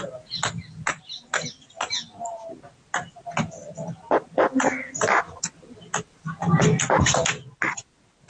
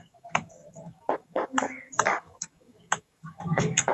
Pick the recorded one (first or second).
first